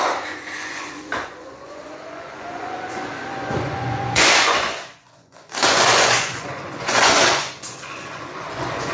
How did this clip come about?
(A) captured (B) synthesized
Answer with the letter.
B